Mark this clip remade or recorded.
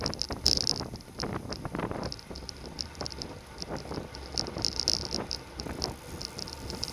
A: recorded